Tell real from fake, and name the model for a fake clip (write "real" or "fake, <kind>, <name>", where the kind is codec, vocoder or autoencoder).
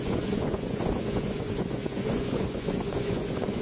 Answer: fake, vocoder, Vocos